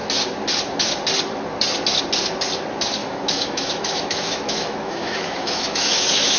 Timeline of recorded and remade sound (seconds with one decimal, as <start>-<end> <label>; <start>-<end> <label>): 0.0-3.0 recorded; 3.0-6.4 remade